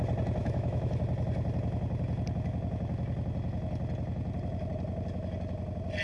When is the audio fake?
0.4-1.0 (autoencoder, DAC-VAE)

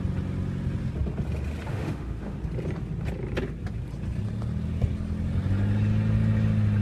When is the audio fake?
1.7-2.4 (autoencoder, DAC-VAE)

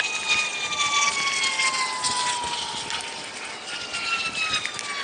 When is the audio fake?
none

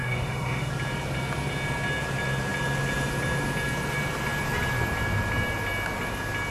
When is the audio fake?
0.0-0.7 (autoencoder, DAC-VAE)